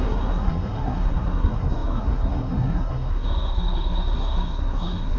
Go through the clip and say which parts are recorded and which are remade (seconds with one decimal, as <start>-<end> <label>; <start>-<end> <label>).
0.0-5.2 remade